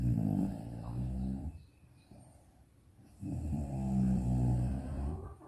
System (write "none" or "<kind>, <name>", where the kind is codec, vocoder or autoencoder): vocoder, BigVGAN v2